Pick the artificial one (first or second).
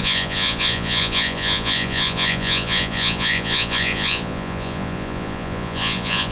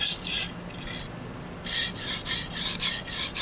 first